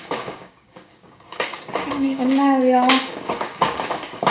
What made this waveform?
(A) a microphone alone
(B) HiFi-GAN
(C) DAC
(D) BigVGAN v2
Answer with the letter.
C